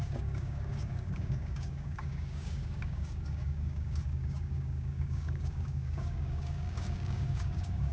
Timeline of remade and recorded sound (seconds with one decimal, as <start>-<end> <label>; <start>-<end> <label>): 0.0-7.9 remade